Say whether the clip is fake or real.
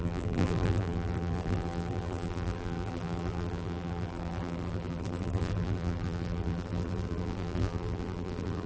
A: fake